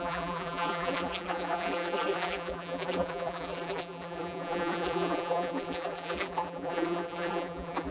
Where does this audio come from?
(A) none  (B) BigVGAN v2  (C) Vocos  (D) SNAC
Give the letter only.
B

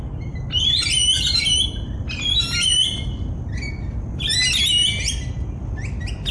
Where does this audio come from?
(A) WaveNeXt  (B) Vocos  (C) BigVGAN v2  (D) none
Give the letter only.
D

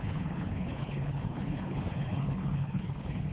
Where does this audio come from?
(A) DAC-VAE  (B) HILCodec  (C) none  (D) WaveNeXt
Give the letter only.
B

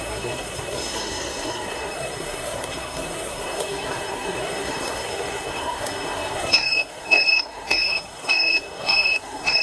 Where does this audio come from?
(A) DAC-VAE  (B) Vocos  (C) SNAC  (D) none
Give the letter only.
C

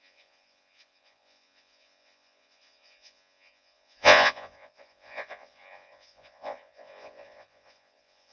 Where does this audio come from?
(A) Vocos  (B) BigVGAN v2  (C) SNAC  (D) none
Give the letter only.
A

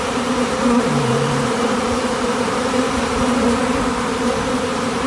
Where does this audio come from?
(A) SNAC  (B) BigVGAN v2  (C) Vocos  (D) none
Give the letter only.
B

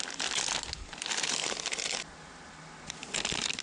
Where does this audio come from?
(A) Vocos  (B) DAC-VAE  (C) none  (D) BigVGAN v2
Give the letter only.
C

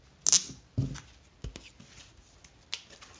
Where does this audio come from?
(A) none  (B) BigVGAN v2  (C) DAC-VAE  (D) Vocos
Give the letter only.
A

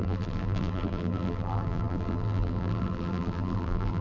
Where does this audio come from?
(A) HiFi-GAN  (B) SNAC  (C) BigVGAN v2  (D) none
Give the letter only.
C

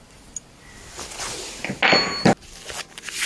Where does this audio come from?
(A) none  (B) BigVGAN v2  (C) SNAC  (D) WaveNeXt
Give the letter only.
A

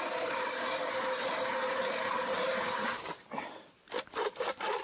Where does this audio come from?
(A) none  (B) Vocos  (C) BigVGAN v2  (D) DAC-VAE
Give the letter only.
C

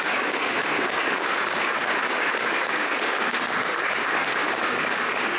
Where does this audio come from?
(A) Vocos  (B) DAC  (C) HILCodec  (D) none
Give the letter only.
B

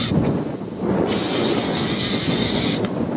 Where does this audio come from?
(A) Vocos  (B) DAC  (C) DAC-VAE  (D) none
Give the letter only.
A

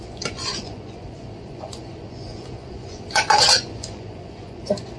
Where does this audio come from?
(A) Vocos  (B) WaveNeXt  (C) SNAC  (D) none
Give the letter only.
A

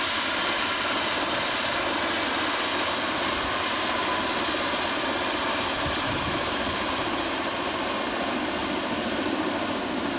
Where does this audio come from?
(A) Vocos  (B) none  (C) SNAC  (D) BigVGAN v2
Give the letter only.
B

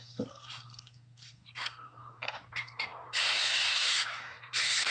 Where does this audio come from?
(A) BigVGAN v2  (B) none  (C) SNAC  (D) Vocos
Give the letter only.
C